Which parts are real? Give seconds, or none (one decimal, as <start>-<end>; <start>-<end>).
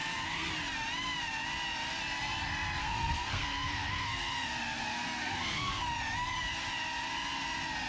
0.5-2.8; 5.8-7.9